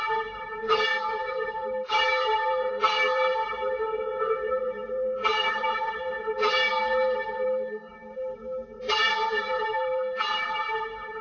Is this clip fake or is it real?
fake